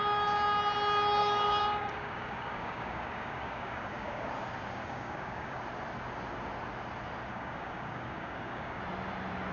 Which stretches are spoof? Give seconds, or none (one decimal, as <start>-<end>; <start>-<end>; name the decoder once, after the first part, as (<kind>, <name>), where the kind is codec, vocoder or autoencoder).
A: 1.2-4.3 (codec, DAC); 4.8-5.6; 7.3-8.8